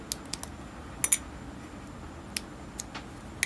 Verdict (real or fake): real